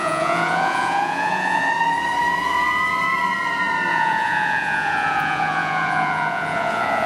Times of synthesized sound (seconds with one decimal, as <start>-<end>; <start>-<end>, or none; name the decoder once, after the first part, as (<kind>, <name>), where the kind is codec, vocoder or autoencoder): 0.0-1.7 (vocoder, Vocos); 3.9-7.1